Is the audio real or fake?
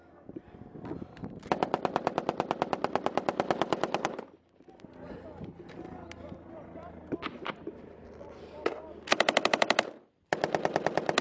real